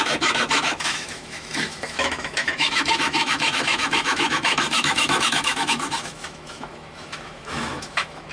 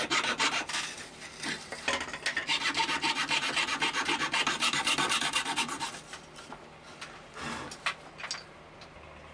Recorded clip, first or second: second